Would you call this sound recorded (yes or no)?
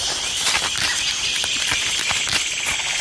yes